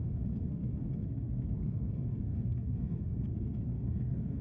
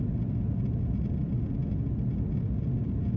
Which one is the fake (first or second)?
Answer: first